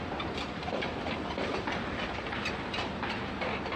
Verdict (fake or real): real